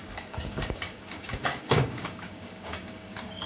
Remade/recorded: remade